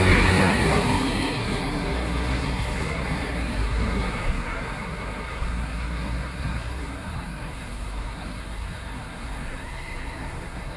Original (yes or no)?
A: no